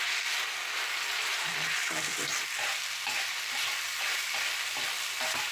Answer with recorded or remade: remade